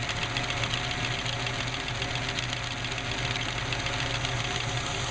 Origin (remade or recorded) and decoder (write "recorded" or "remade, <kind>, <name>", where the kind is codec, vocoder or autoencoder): recorded